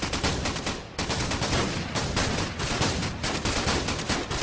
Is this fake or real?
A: real